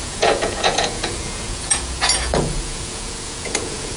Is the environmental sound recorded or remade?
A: remade